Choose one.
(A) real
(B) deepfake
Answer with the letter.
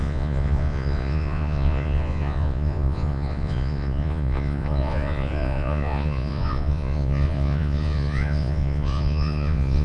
B